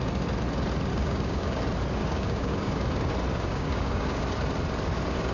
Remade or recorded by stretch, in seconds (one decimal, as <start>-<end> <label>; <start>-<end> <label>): 0.0-0.9 recorded; 0.9-1.6 remade; 1.6-2.0 recorded; 2.0-2.9 remade; 2.9-3.3 recorded; 3.3-4.2 remade; 4.2-5.3 recorded